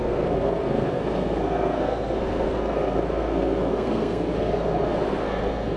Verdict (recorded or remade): remade